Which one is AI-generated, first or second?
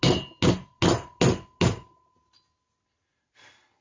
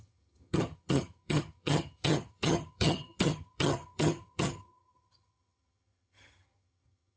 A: second